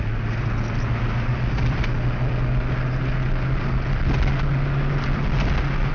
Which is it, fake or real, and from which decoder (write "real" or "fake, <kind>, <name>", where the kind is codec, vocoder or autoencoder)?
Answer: real